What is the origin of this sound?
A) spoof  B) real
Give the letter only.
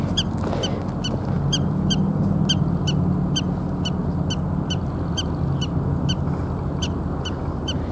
B